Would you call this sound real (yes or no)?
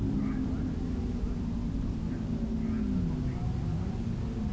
yes